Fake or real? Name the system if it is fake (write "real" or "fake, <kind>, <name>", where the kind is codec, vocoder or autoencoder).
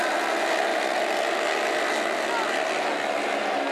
real